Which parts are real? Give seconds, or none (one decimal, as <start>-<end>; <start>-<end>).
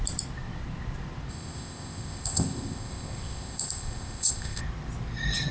0.0-1.3; 4.6-5.5